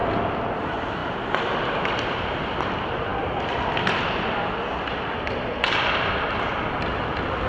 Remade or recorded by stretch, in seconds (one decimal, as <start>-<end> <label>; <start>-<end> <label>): 0.0-0.6 recorded; 0.6-7.5 remade